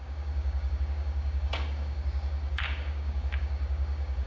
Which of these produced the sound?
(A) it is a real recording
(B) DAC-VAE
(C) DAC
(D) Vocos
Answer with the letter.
C